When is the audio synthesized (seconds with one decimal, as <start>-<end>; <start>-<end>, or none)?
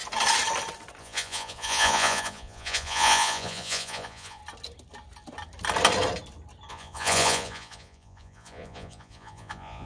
1.0-4.4; 6.7-9.9